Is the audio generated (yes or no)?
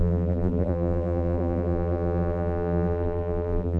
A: yes